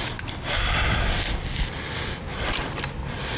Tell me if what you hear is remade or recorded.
recorded